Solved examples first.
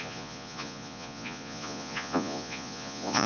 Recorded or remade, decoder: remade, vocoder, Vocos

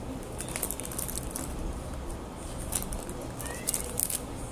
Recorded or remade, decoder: recorded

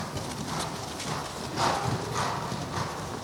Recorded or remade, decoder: recorded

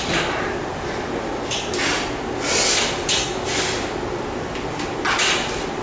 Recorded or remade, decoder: recorded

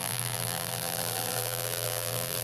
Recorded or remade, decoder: remade, vocoder, BigVGAN v2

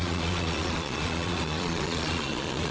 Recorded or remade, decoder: remade, vocoder, Vocos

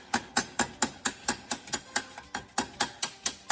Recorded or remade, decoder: recorded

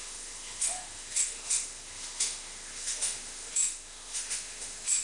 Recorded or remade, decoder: remade, autoencoder, DAC-VAE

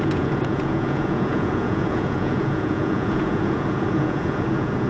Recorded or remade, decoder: remade, vocoder, Vocos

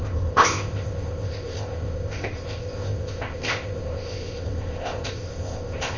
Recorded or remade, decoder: remade, codec, ZipCodec